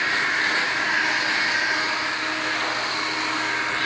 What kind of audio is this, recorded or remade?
recorded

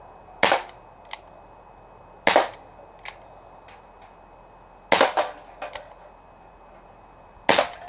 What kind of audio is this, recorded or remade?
recorded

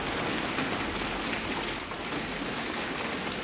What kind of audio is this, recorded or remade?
recorded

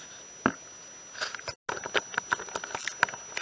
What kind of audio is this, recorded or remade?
recorded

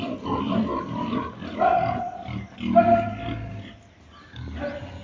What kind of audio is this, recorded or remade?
recorded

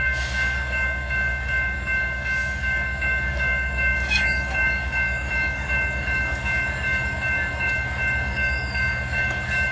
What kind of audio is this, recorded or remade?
remade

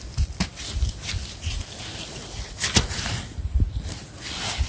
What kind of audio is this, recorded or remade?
recorded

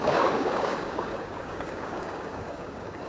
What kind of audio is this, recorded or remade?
remade